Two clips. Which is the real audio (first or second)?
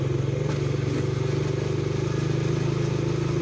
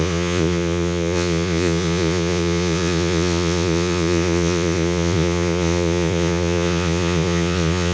first